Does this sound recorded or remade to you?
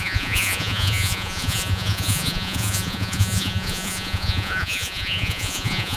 remade